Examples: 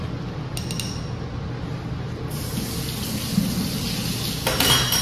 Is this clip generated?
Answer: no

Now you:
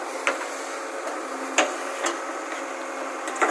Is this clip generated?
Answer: no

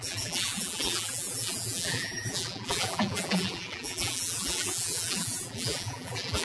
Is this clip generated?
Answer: yes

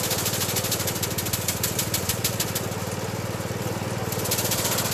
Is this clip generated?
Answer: no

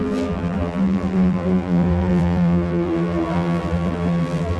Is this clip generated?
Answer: yes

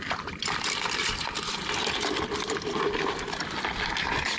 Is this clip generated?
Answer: yes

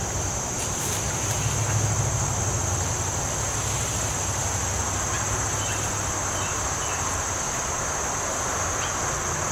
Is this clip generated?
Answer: no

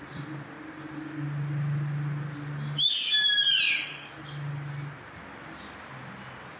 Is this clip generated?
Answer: no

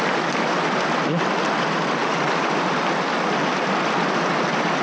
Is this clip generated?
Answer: no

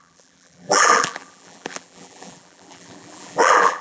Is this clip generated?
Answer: yes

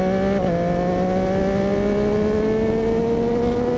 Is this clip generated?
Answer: no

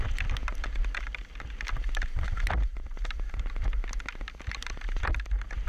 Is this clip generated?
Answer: no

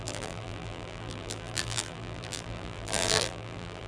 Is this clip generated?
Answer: yes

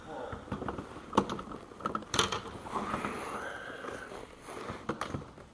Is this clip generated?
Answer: no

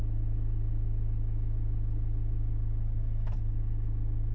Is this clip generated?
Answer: no